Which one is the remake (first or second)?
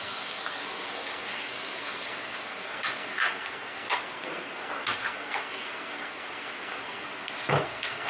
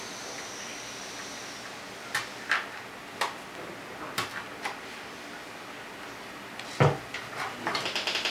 first